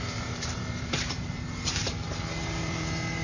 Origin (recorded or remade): remade